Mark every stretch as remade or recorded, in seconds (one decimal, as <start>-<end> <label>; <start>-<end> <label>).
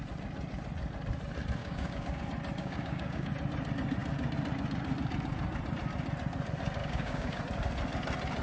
0.0-1.6 recorded; 1.6-2.2 remade; 2.2-2.6 recorded; 2.6-3.3 remade; 3.3-6.8 recorded; 6.8-7.4 remade; 7.4-8.4 recorded